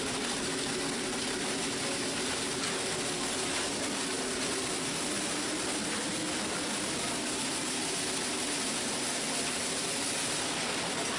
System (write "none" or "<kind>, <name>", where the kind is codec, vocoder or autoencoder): none